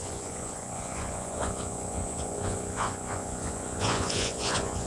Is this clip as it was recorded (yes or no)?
no